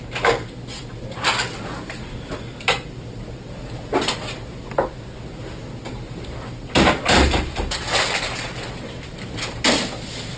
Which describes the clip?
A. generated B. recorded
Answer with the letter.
B